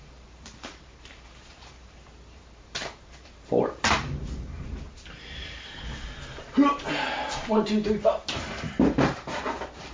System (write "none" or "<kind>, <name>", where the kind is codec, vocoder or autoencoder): vocoder, BigVGAN v2